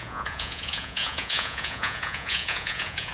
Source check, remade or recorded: remade